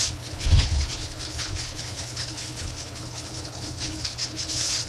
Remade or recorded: remade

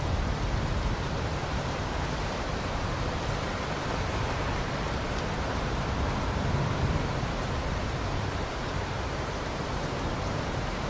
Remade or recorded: remade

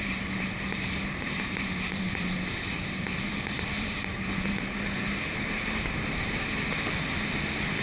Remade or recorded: remade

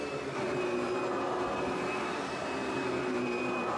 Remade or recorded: recorded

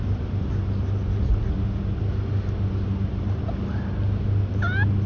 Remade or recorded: recorded